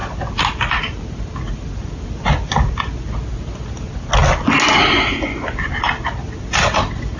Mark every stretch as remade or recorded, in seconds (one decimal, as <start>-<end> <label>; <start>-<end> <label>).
0.0-7.2 recorded